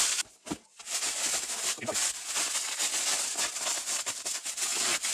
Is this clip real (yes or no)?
yes